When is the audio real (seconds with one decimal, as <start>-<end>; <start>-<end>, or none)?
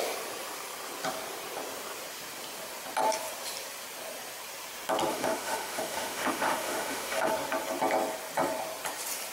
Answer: 0.0-5.1; 7.3-9.3